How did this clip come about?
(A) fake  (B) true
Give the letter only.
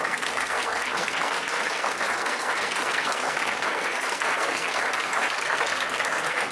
A